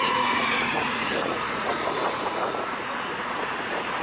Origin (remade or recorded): remade